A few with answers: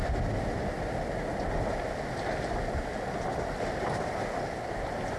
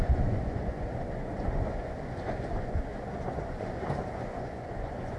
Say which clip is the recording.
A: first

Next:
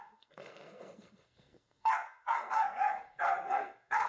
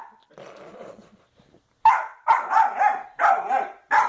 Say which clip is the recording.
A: second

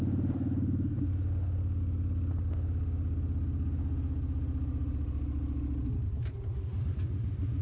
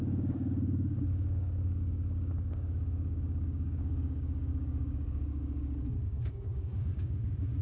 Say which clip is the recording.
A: first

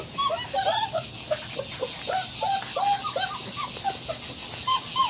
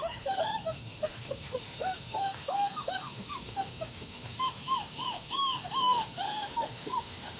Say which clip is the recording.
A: first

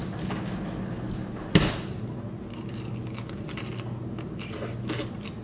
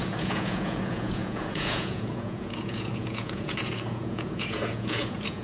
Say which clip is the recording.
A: first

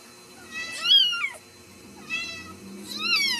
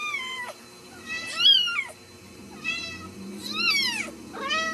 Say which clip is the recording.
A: first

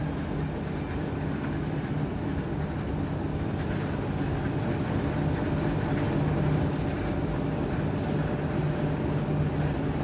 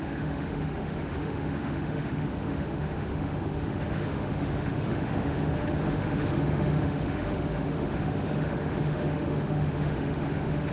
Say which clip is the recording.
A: first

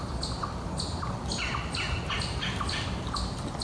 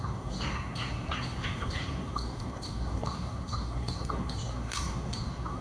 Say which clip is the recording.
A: first